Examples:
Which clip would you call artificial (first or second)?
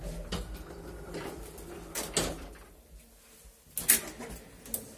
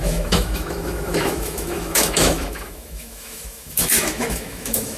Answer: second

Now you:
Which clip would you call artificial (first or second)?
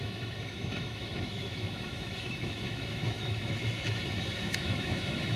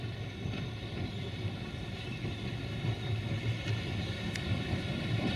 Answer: first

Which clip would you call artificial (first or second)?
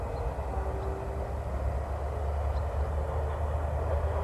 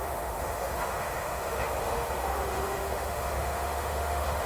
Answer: second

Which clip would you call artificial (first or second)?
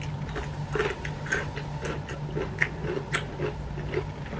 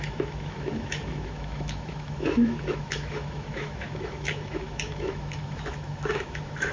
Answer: second